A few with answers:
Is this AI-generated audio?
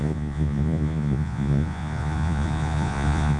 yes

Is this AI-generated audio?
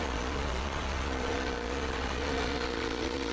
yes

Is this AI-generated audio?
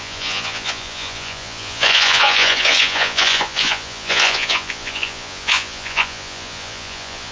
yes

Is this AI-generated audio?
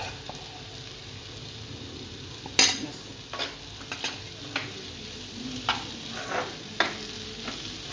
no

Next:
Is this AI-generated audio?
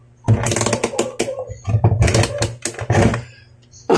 no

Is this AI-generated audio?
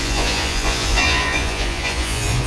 yes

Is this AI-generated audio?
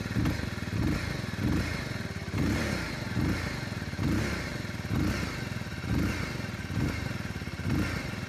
no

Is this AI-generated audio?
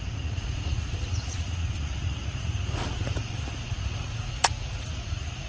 yes